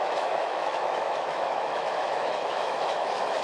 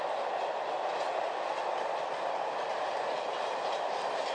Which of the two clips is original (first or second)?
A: second